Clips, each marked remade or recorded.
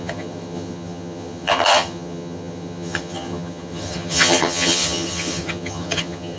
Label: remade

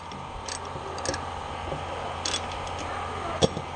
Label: recorded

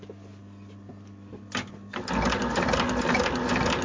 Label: recorded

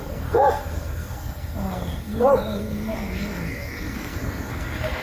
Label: remade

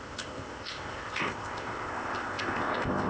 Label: remade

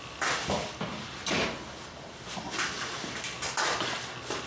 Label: recorded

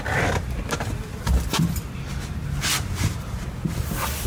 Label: recorded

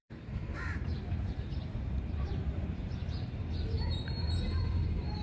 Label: remade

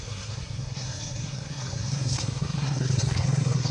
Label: remade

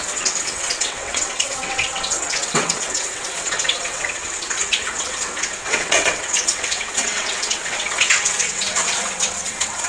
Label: remade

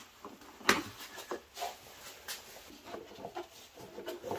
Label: recorded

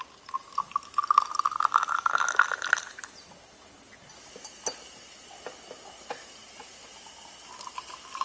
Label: recorded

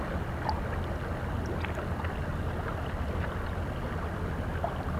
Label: recorded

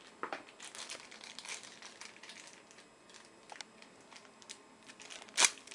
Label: recorded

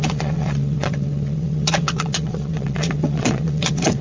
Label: remade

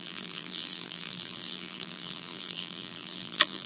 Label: remade